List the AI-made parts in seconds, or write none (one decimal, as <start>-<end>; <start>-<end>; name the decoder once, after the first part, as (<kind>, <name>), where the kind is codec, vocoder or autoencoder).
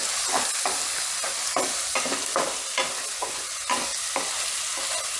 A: 3.1-3.9 (vocoder, Vocos)